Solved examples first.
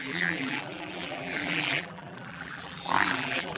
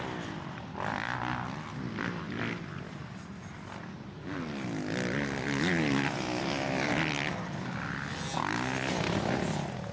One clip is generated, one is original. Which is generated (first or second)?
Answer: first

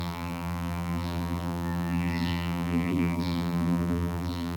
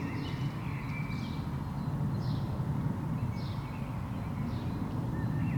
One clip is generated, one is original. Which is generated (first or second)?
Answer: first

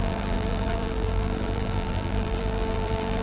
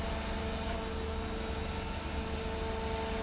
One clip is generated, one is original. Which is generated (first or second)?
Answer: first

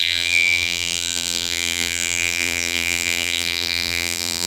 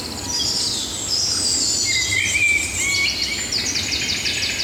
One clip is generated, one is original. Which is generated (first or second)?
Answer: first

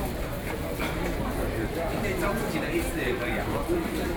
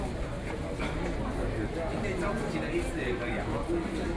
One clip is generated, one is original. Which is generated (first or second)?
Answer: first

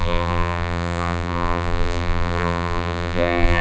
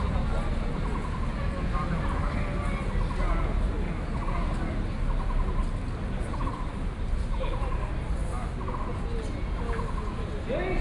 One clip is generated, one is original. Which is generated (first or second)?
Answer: first